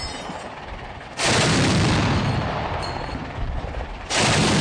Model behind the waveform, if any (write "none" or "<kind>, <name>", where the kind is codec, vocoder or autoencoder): vocoder, BigVGAN v2